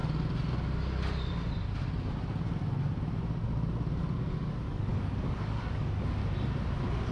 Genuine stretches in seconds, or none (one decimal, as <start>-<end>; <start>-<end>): 0.0-4.3; 6.2-7.1